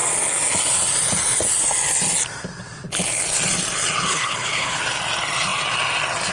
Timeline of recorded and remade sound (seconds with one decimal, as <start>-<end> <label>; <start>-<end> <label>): 0.0-4.1 recorded; 4.1-4.8 remade; 4.8-6.3 recorded